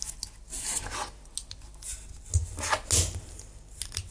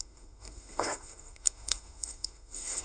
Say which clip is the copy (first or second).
second